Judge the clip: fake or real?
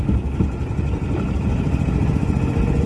real